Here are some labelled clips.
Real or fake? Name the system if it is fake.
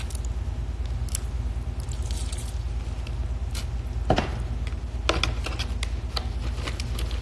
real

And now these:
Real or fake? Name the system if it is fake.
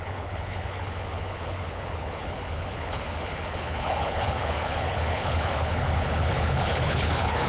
fake, codec, HILCodec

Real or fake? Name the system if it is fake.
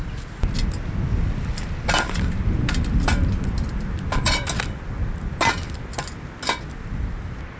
real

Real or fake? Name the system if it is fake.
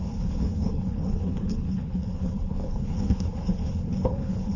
fake, codec, HILCodec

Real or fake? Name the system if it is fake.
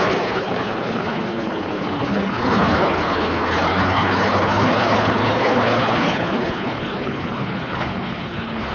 fake, codec, HILCodec